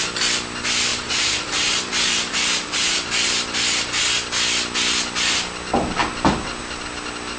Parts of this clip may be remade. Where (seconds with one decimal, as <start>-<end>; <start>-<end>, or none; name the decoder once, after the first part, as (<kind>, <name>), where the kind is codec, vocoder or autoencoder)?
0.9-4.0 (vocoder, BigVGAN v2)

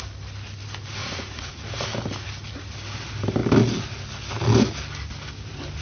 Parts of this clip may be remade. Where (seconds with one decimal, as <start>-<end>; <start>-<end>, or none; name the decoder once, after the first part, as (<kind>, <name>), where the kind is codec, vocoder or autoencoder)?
1.0-1.5 (vocoder, Vocos)

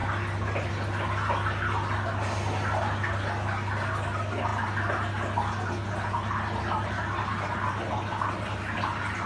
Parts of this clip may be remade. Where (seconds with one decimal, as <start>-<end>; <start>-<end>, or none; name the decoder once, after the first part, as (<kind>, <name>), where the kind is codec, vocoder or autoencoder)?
none

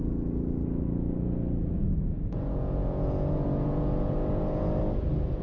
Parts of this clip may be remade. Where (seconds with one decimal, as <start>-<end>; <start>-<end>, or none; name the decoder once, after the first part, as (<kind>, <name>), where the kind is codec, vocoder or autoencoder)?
1.6-4.8 (vocoder, Vocos)

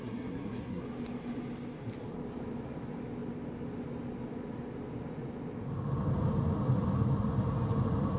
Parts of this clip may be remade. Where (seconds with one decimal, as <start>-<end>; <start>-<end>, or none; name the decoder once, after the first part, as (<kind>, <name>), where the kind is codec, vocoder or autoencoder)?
0.0-0.8 (codec, SNAC)